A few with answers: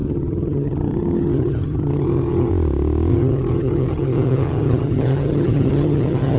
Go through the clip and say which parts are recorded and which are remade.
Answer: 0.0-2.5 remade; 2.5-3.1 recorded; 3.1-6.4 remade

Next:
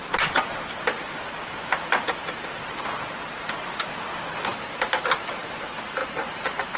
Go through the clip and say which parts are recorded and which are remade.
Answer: 0.0-4.5 recorded; 4.5-5.3 remade; 5.3-6.0 recorded; 6.0-6.8 remade